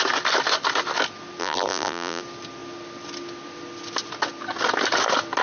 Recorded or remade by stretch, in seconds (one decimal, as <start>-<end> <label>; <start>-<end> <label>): 0.0-1.4 recorded; 1.4-2.2 remade; 2.2-5.4 recorded